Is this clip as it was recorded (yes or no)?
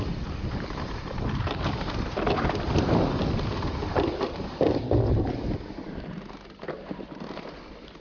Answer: yes